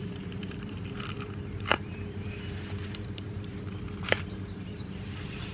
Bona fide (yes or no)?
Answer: no